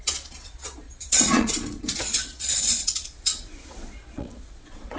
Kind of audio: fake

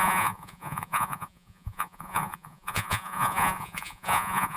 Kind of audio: fake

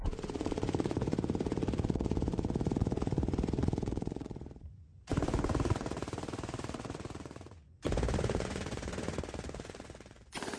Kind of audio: fake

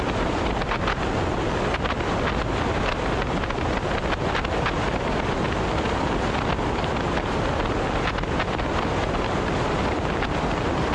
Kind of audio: real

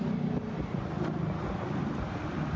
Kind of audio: real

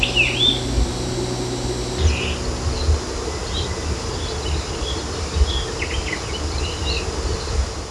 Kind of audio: real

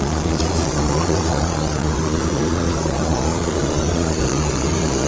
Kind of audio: fake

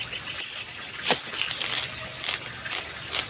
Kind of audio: real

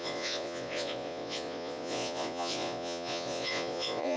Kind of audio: fake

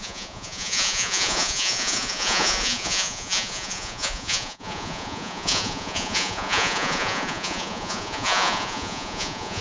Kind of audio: fake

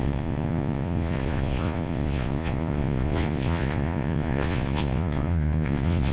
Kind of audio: fake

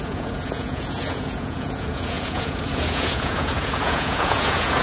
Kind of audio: fake